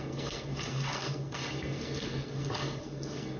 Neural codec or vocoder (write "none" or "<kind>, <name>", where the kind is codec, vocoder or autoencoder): codec, SNAC